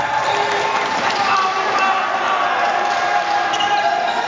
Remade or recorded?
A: recorded